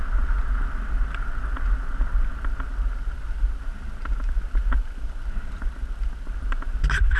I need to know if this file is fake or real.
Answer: real